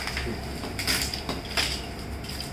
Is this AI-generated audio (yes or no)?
no